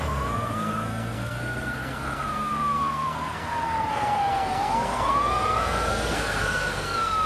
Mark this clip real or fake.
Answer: fake